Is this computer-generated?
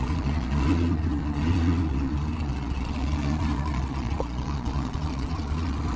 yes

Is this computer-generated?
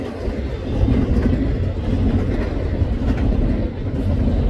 no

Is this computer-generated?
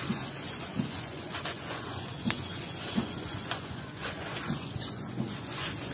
yes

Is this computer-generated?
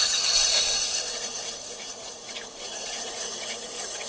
yes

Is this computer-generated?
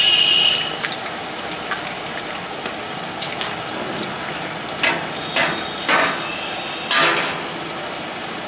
no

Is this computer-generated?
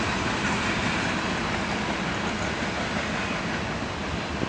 no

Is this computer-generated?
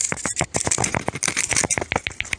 no